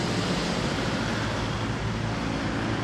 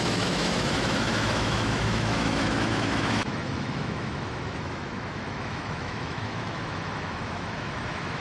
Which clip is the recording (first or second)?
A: first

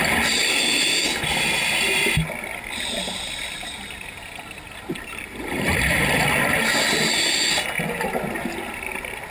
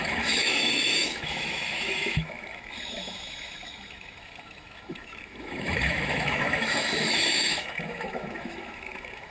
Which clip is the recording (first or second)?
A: first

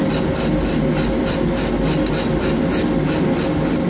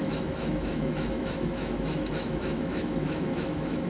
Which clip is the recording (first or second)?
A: first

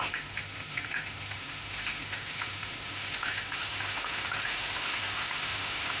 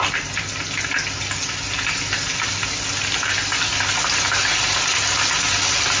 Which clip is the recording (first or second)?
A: second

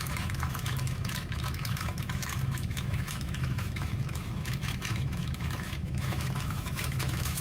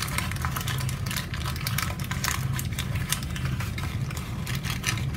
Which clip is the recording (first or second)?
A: second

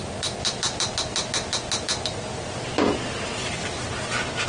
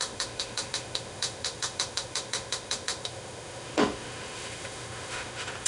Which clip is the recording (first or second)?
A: first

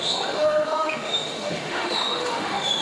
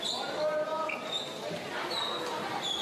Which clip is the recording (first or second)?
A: second